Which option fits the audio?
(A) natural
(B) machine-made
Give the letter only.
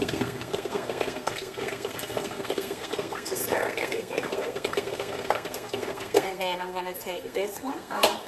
B